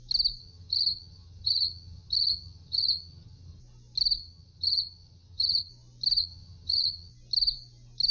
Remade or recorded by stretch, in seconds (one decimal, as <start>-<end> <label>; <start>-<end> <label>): 0.0-0.4 recorded; 0.4-3.6 remade; 3.6-4.2 recorded; 4.2-5.7 remade; 5.7-6.2 recorded; 6.2-7.1 remade; 7.1-8.1 recorded